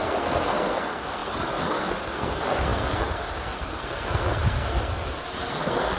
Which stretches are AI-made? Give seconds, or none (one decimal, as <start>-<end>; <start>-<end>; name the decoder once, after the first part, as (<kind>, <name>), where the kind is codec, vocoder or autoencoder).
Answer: 0.0-6.0 (codec, SNAC)